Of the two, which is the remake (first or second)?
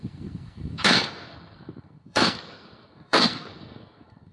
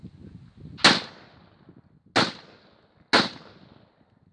first